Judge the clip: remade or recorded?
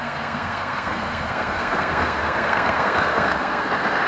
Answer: remade